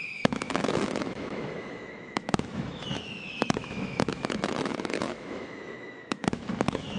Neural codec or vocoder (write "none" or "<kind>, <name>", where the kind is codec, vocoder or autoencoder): autoencoder, DAC-VAE